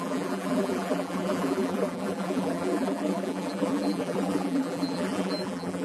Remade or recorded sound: remade